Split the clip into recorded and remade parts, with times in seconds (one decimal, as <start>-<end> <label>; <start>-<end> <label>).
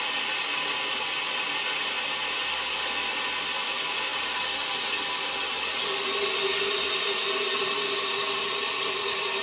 0.0-9.4 recorded